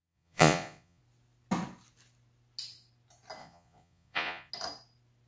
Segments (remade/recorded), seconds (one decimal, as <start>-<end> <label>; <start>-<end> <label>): 0.0-1.0 remade; 1.0-3.4 recorded; 3.4-4.5 remade; 4.5-5.3 recorded